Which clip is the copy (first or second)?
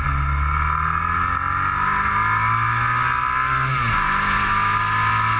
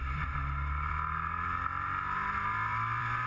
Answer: second